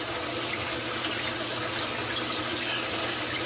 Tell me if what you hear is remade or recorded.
recorded